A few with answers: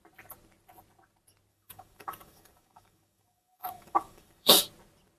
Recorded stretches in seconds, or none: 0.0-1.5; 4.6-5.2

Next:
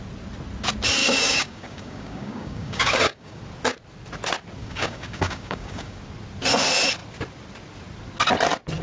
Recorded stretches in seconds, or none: 0.0-1.0; 3.4-4.6; 6.0-8.8

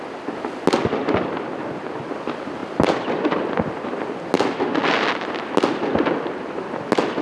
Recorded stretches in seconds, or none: 0.0-7.2